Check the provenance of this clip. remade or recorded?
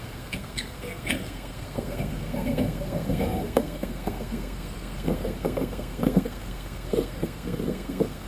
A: remade